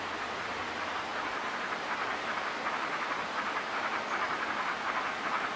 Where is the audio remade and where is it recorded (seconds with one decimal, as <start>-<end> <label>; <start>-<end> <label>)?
0.0-5.6 recorded